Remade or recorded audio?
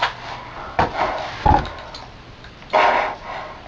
recorded